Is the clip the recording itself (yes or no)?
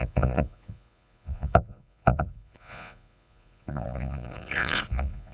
no